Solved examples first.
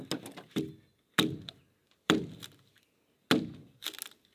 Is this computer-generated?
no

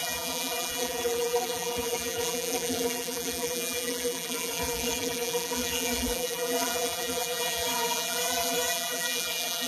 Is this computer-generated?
yes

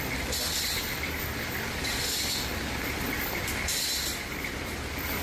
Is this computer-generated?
no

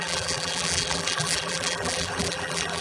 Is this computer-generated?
yes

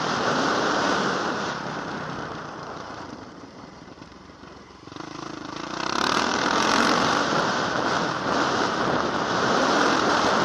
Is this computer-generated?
yes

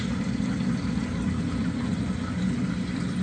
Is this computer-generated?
no